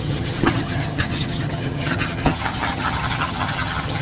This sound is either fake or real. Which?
fake